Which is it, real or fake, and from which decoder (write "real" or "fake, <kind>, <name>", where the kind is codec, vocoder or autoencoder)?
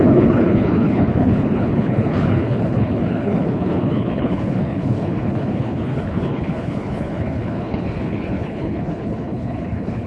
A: fake, codec, HILCodec